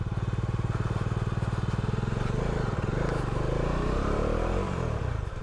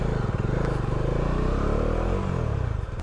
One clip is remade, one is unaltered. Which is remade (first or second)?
first